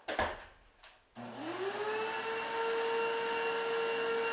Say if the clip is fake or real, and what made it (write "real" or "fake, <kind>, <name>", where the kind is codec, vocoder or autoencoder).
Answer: real